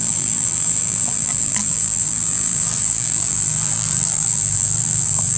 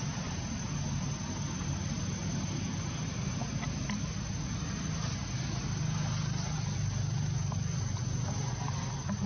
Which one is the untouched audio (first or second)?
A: second